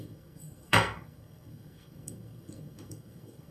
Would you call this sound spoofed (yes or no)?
yes